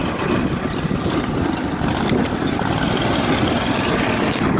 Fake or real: real